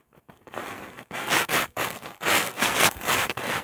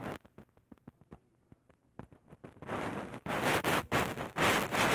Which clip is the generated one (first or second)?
first